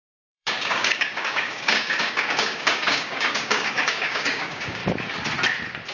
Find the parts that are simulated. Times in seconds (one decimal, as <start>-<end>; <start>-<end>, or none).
0.0-4.8